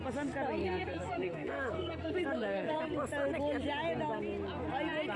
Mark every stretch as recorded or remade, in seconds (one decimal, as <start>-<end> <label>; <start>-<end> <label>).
0.0-0.6 recorded; 0.6-2.8 remade; 2.8-5.2 recorded